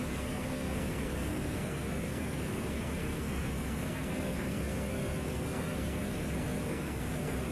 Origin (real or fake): fake